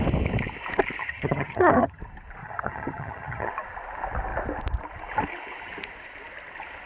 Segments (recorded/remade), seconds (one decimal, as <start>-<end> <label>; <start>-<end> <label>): 0.0-1.0 recorded; 1.0-2.0 remade; 2.0-2.4 recorded; 2.4-3.5 remade; 3.5-6.9 recorded